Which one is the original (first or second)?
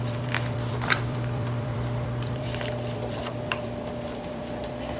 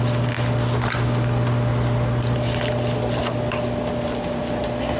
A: second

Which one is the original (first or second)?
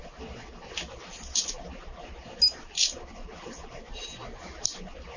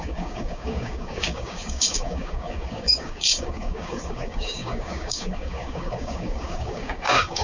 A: first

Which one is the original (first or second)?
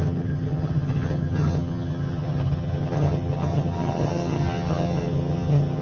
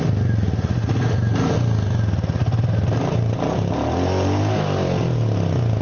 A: second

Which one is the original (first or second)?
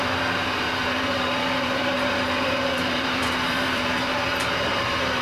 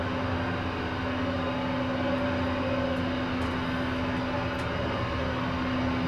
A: second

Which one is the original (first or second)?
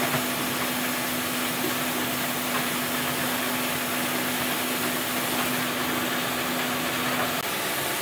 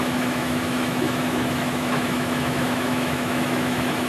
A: first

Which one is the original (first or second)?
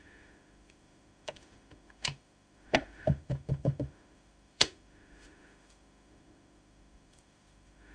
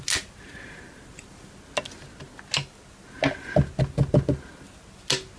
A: second